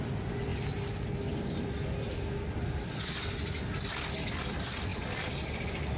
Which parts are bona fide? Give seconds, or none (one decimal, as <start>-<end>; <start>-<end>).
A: 0.0-6.0